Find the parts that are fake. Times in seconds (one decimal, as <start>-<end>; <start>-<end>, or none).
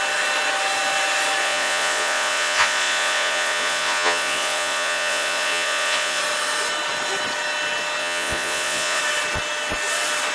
1.4-6.2; 8.0-9.0